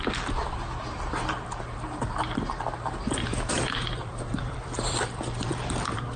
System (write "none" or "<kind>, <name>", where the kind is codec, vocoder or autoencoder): vocoder, BigVGAN v2